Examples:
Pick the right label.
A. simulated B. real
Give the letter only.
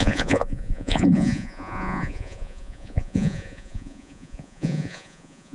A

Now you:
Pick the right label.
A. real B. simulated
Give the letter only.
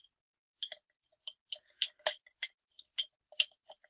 A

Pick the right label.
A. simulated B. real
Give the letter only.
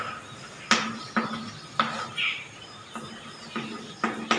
B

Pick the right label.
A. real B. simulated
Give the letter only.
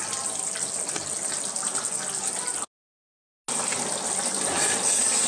A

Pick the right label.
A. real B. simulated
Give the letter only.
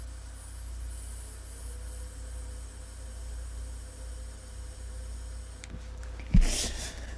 A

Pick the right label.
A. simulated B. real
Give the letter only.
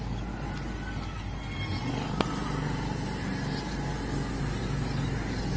B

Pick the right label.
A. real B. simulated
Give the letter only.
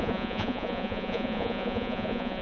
B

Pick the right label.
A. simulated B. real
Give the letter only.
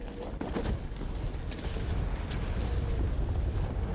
B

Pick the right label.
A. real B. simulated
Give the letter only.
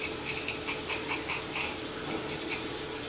A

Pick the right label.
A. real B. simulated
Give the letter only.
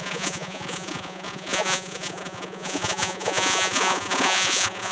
B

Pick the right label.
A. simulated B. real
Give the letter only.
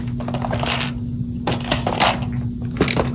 B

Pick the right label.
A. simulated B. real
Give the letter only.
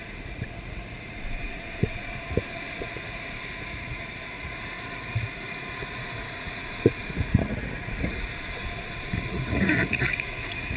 A